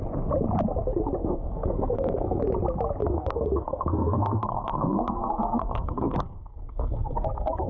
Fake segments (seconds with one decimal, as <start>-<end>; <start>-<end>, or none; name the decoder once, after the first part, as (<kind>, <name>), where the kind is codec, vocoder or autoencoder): 1.2-2.4 (codec, SNAC); 3.0-7.7